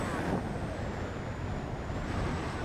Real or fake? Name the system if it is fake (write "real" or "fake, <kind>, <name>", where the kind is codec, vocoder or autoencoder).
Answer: real